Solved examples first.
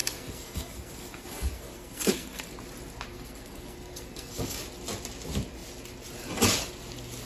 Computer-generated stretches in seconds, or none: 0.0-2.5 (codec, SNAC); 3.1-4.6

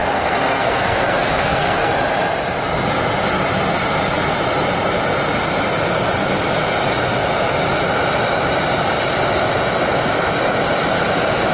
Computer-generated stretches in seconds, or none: 0.0-1.9 (codec, SNAC)

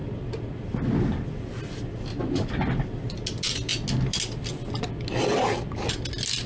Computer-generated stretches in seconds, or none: none

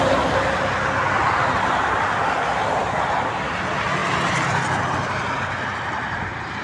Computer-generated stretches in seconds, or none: none

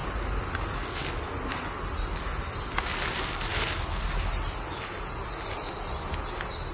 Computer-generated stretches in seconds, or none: none

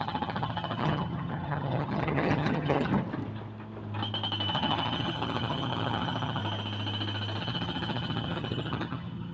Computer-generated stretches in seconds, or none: 0.0-2.9 (vocoder, HiFi-GAN); 4.5-6.4; 7.4-9.3